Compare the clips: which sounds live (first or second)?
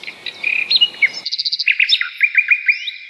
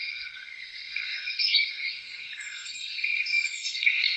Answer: first